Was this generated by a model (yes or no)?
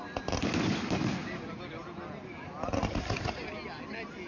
no